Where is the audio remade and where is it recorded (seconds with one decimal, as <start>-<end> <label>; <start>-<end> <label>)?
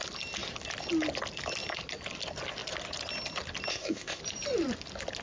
0.0-3.7 recorded; 3.7-4.2 remade; 4.2-5.2 recorded